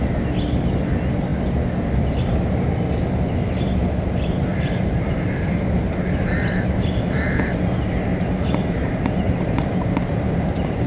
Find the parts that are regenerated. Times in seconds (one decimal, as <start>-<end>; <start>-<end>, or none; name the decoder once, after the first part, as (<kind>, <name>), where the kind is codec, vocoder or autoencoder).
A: 4.5-7.4 (vocoder, BigVGAN v2); 8.1-10.9